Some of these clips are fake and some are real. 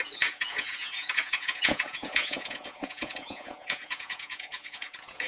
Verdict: fake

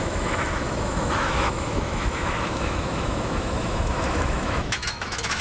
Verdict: fake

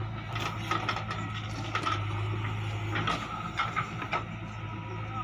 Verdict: real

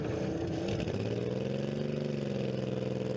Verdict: real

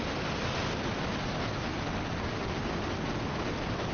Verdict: real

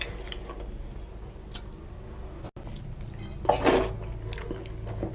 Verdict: real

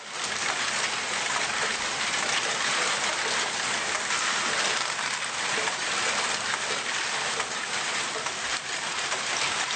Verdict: real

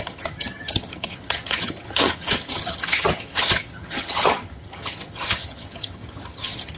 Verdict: fake